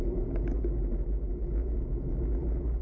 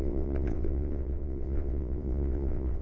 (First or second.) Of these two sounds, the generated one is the second